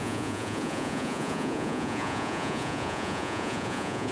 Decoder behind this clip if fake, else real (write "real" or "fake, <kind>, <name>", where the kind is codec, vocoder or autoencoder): fake, vocoder, Vocos